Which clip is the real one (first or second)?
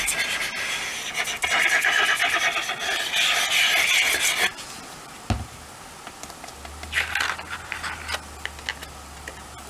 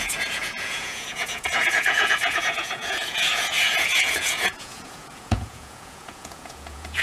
first